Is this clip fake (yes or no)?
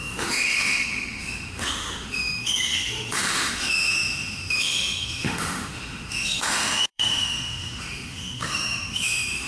yes